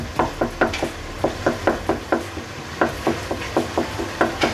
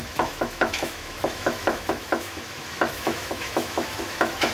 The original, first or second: first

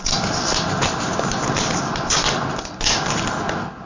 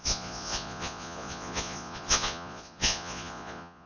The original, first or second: first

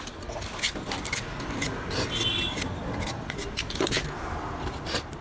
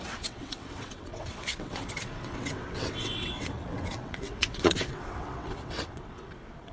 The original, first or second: first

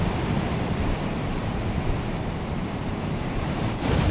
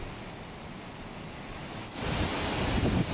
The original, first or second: second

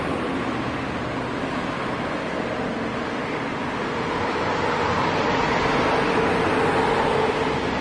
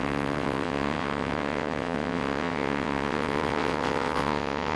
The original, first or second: first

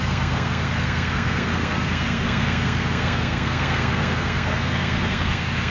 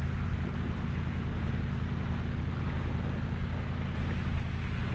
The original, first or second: second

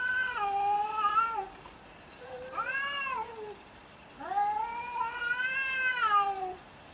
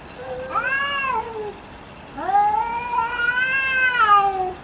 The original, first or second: second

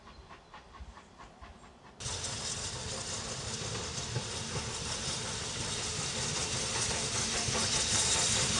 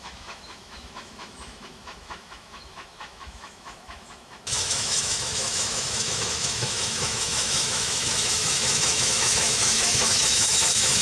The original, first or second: first